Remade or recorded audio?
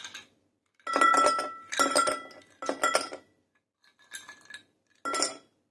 recorded